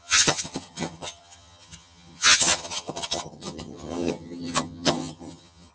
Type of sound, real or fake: fake